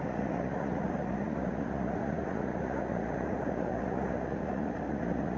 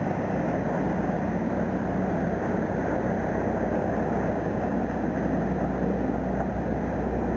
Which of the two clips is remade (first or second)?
first